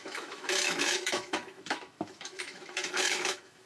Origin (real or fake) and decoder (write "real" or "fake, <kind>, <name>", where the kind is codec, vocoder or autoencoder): fake, autoencoder, DAC-VAE